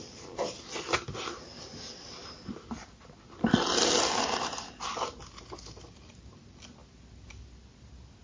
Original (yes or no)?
yes